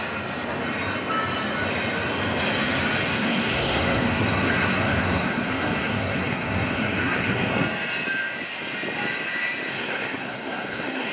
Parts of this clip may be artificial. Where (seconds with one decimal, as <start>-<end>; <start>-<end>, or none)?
3.1-7.5; 9.7-11.1